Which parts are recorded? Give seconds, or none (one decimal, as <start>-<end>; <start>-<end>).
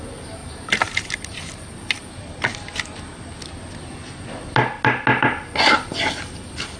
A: 0.0-0.4; 1.7-6.8